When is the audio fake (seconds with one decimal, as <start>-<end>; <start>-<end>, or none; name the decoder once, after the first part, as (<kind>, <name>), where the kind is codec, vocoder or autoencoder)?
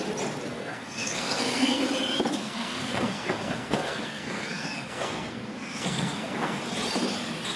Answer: 0.5-1.8 (codec, SNAC); 2.3-6.6